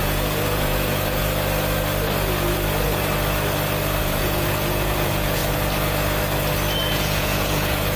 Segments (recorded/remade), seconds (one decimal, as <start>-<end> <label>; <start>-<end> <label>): 0.0-1.2 remade; 1.2-4.0 recorded; 4.0-5.4 remade; 5.4-6.9 recorded; 6.9-8.0 remade